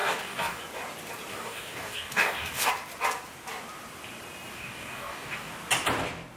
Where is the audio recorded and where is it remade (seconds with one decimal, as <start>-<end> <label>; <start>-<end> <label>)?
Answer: 0.0-0.6 remade; 0.6-1.3 recorded; 1.3-2.7 remade; 2.7-4.5 recorded; 4.5-5.5 remade; 5.5-6.4 recorded